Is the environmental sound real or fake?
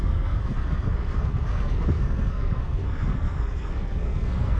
fake